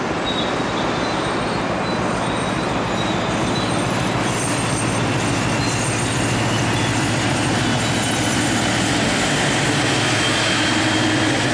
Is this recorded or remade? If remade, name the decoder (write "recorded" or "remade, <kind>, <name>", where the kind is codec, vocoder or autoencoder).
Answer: recorded